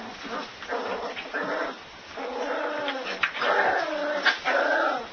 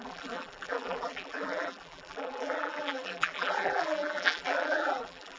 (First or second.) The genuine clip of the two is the first